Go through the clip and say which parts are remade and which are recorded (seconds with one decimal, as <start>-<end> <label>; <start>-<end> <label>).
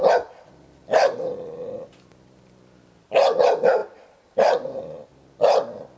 0.0-6.0 recorded